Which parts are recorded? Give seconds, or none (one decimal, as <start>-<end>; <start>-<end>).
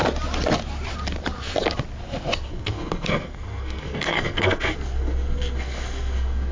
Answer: 0.0-2.5